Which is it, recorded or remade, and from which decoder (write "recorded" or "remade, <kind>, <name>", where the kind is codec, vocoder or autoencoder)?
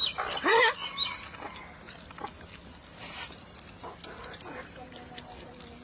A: recorded